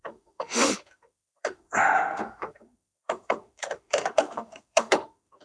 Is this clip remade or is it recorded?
remade